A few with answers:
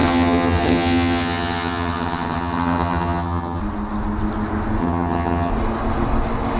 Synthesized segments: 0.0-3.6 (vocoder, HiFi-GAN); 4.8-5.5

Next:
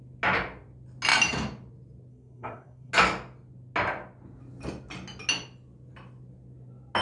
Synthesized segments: 2.1-2.9 (codec, SNAC)

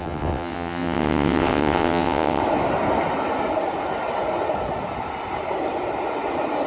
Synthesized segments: 0.0-2.4 (vocoder, WaveNeXt)

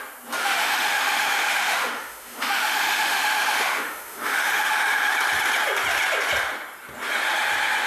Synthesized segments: 0.4-5.1 (autoencoder, DAC-VAE)

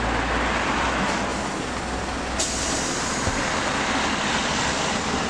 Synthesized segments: none